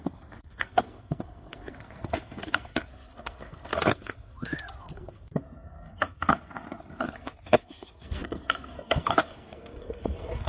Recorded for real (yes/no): no